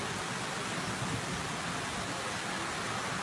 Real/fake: real